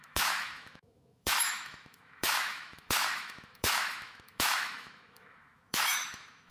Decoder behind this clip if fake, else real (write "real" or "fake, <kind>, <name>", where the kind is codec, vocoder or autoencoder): fake, autoencoder, DAC-VAE